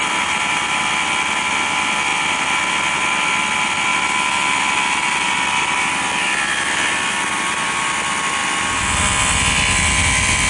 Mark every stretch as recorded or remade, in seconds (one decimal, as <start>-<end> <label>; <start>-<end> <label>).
0.0-10.5 recorded